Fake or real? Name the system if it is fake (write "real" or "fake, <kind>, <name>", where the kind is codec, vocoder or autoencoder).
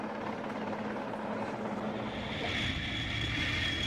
real